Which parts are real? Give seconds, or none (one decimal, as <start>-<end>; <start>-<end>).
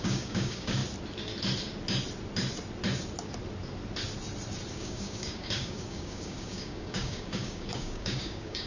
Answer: 0.8-4.7